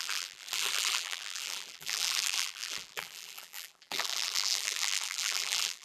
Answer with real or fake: fake